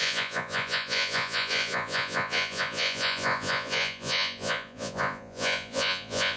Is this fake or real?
fake